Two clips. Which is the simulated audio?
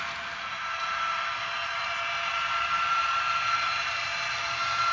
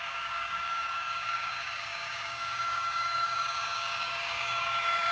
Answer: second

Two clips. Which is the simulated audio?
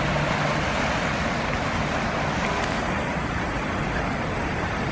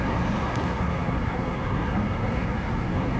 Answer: second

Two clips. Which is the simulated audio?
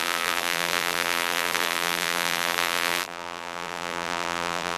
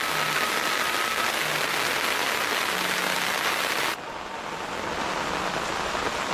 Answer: first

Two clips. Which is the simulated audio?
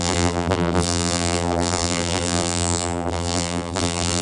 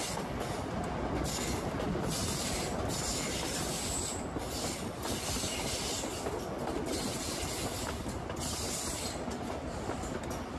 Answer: first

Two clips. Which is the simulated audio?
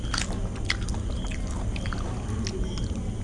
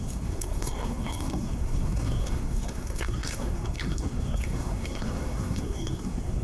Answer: second